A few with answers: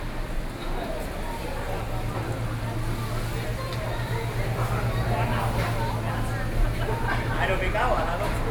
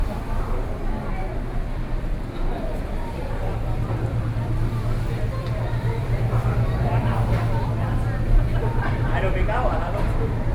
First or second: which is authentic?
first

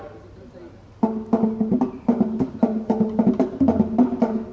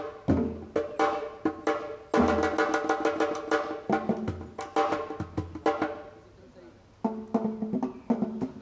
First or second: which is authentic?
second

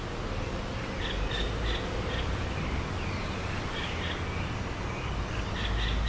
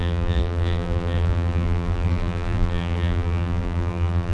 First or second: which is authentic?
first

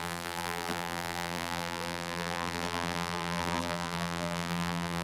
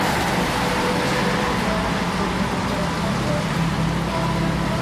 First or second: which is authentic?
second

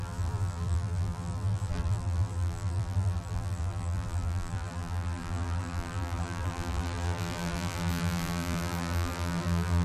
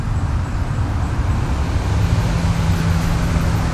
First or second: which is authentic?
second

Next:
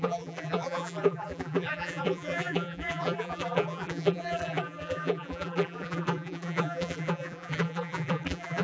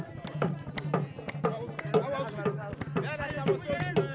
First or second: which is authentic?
second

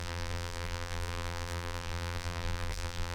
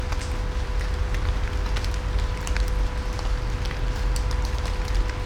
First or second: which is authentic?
second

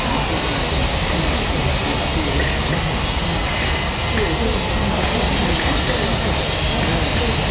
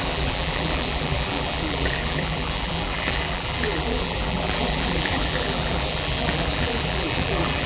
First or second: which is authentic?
first